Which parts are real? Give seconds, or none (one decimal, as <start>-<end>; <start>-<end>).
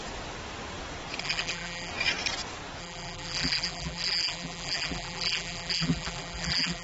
0.0-1.2; 1.9-2.8